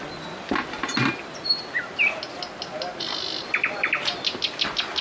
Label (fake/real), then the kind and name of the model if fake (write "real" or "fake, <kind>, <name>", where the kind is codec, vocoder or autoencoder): real